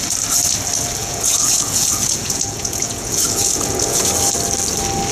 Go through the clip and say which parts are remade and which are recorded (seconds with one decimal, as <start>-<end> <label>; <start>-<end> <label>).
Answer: 0.0-1.0 recorded; 1.0-4.1 remade; 4.1-5.1 recorded